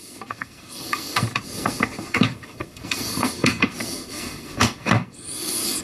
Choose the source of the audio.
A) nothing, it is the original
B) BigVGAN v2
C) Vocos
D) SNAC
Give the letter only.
D